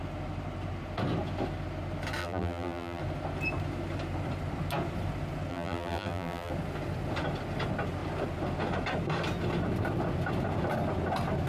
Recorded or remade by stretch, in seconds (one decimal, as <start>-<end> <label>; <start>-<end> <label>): 0.0-2.2 recorded; 2.2-3.0 remade; 3.0-5.5 recorded; 5.5-6.5 remade; 6.5-11.5 recorded